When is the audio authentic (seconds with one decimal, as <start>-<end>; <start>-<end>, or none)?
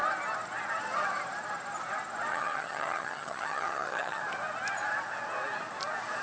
0.0-2.3; 4.2-6.2